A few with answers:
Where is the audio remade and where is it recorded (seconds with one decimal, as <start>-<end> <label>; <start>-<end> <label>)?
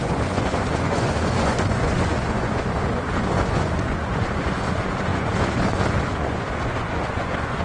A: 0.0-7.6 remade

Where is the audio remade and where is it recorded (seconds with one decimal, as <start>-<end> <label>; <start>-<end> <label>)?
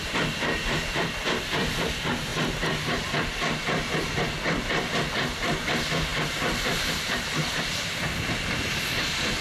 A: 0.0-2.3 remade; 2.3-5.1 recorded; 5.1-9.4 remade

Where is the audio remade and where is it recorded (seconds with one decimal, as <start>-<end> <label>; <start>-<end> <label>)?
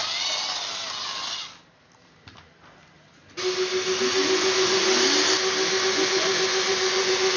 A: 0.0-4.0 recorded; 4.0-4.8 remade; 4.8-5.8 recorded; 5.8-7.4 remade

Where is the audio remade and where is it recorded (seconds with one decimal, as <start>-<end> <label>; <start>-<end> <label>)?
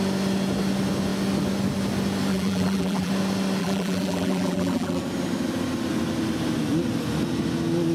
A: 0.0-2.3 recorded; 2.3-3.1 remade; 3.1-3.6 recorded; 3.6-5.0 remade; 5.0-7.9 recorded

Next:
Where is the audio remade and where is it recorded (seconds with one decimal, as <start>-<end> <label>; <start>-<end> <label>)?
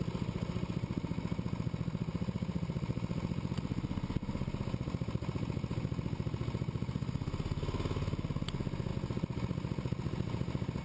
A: 0.0-10.8 recorded